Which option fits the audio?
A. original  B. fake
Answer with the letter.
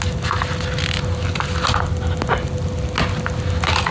A